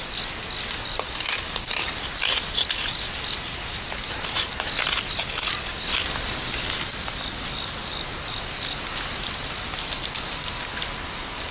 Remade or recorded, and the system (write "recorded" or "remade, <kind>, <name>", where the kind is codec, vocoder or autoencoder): recorded